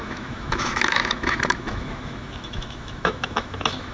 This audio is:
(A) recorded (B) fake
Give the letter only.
B